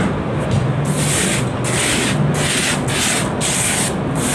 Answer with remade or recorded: recorded